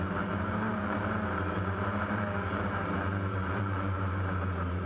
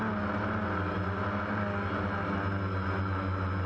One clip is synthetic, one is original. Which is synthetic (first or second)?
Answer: first